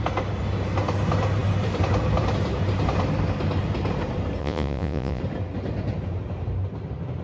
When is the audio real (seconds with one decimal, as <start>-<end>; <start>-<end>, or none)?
0.0-4.4; 5.2-7.2